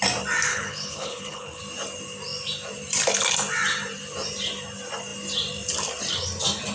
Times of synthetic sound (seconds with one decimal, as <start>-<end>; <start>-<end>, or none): 0.5-1.6